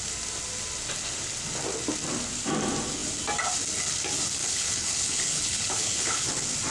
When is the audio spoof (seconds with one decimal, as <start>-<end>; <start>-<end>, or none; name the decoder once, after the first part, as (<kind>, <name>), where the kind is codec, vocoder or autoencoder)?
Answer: 4.4-6.3 (codec, HILCodec)